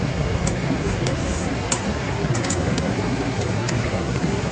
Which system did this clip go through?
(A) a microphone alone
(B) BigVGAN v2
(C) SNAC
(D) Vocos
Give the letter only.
C